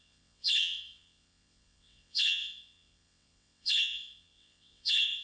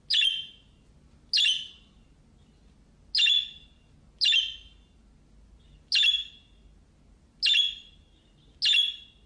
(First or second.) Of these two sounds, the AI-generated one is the first